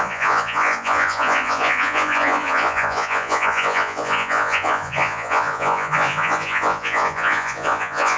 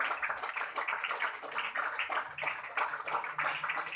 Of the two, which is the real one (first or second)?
second